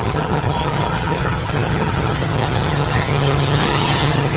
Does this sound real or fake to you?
fake